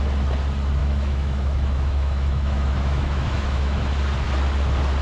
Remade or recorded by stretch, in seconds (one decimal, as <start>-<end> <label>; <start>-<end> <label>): 0.0-0.8 recorded; 0.8-3.8 remade; 3.8-5.0 recorded